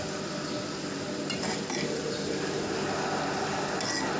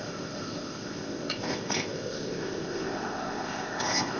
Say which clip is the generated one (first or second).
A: second